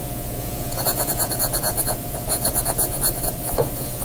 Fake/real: fake